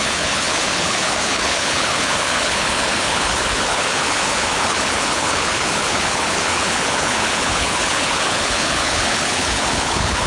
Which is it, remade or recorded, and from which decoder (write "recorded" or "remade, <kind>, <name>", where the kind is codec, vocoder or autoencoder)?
remade, codec, HILCodec